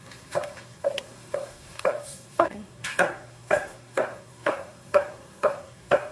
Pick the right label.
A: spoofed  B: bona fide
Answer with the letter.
A